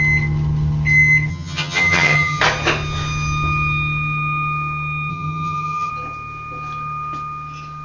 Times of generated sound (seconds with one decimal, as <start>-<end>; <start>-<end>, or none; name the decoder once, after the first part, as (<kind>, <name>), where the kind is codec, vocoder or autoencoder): 1.3-2.4 (vocoder, HiFi-GAN); 5.1-5.9